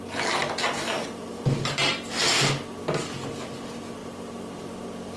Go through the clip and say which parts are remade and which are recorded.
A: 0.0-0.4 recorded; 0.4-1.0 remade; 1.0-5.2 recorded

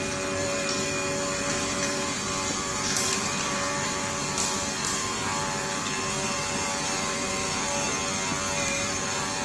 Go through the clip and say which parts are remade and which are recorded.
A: 0.0-7.9 remade; 7.9-8.9 recorded; 8.9-9.4 remade

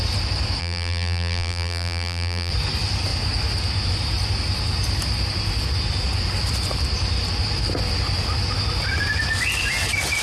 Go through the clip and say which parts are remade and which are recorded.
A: 0.0-0.6 recorded; 0.6-2.5 remade; 2.5-10.2 recorded

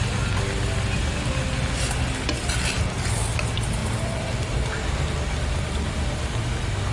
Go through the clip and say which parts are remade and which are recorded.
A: 0.0-3.8 recorded; 3.8-6.5 remade; 6.5-6.9 recorded